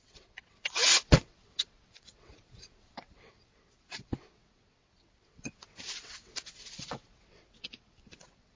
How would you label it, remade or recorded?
remade